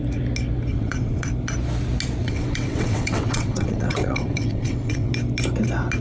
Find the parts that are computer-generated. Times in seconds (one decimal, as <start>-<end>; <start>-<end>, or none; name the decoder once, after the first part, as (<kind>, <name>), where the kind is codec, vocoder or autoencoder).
0.7-1.3 (vocoder, WaveNeXt); 2.2-5.1